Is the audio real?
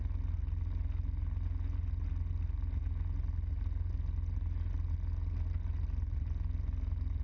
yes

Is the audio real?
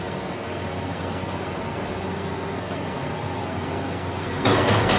no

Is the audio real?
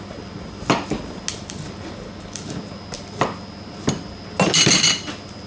yes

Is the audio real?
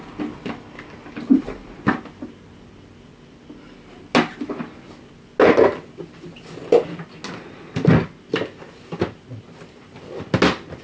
yes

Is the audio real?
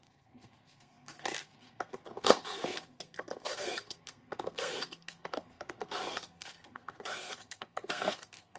no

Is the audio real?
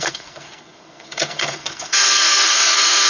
no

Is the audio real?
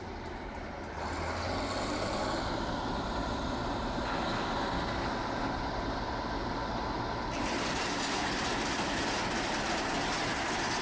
yes